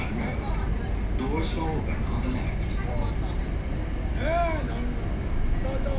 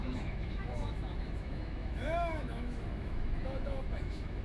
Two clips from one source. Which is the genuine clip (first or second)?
first